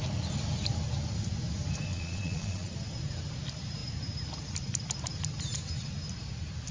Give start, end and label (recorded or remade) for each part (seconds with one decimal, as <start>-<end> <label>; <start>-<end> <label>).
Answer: 0.0-1.9 recorded; 1.9-2.7 remade; 2.7-6.7 recorded